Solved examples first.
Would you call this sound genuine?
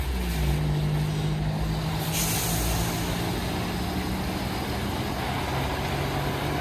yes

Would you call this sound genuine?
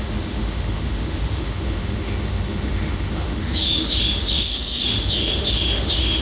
no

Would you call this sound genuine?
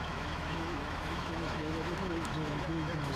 no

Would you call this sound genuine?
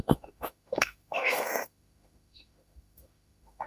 no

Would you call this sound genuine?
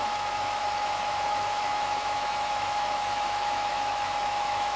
no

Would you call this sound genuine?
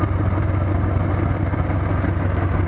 yes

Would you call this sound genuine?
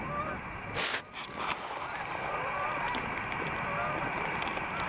yes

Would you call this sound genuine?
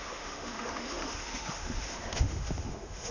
no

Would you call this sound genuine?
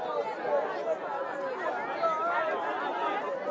yes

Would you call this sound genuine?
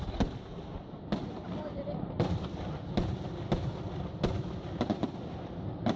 yes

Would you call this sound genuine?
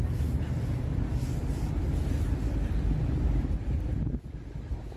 yes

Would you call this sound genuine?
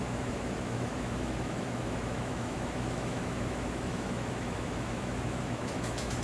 no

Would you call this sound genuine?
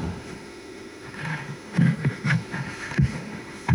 no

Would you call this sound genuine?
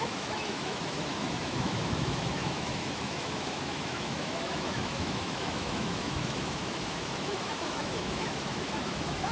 no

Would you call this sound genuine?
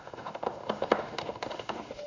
no